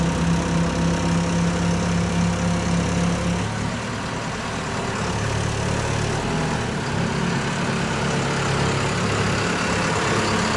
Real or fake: real